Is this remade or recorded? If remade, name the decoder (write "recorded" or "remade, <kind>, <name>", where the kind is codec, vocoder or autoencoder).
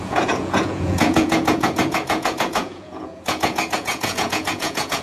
remade, vocoder, Vocos